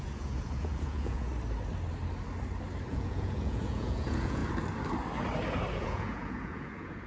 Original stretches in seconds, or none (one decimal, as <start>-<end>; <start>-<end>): 1.3-2.9; 4.4-5.7